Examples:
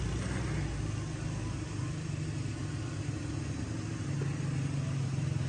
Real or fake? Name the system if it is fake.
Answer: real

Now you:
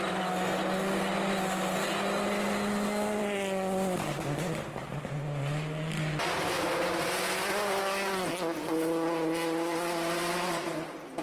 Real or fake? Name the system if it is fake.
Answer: real